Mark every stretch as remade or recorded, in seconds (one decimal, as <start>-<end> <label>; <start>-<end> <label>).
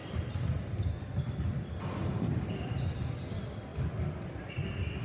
0.0-5.0 recorded